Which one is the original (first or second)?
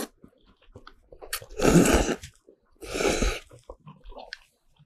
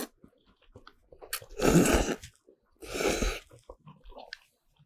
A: second